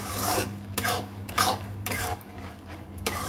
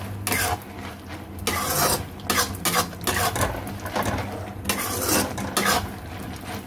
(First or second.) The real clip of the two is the second